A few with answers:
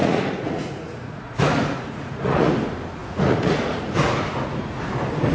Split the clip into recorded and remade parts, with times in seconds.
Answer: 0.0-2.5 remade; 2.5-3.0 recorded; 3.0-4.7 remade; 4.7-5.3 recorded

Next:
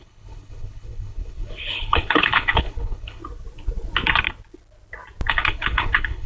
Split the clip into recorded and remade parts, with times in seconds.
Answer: 0.0-3.2 remade; 3.2-5.3 recorded; 5.3-6.3 remade

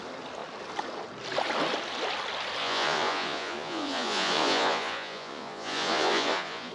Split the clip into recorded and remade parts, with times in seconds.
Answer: 0.0-2.6 recorded; 2.6-6.7 remade